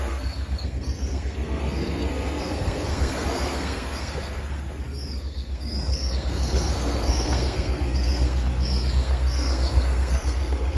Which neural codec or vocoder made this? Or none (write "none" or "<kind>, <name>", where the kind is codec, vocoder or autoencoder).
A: codec, SNAC